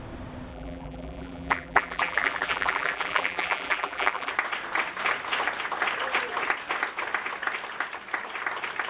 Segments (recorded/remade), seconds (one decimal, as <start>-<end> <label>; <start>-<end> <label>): 0.0-0.5 recorded; 0.5-4.3 remade; 4.3-8.9 recorded